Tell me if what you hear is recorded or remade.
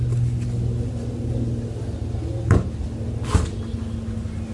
recorded